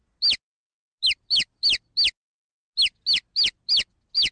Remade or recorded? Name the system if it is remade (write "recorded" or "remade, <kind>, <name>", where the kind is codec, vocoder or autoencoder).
recorded